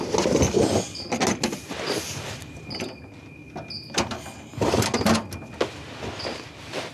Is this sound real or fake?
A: real